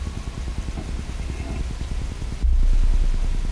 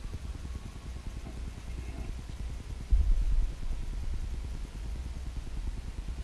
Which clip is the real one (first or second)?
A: first